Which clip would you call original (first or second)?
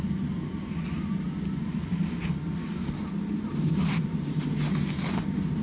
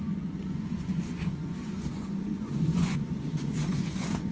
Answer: first